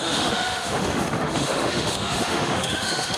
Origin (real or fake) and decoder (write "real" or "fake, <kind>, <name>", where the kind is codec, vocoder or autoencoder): fake, autoencoder, DAC-VAE